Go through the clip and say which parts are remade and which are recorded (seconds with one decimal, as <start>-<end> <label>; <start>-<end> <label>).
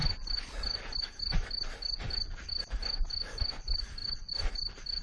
0.0-5.0 recorded